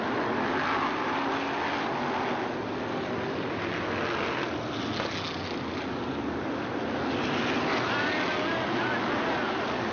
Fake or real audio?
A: real